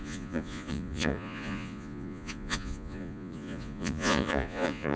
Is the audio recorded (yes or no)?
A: no